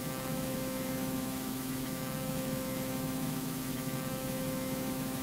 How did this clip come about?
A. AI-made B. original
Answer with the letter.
A